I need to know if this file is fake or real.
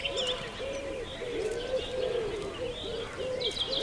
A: real